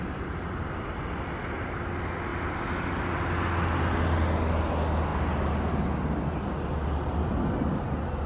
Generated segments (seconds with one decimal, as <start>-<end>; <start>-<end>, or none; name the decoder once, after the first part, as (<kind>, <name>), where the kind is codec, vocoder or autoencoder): 2.3-3.1 (vocoder, BigVGAN v2)